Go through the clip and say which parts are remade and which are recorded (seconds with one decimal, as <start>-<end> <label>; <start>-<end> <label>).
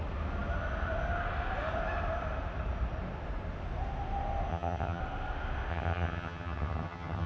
0.0-4.5 recorded; 4.5-5.0 remade; 5.0-5.7 recorded; 5.7-7.3 remade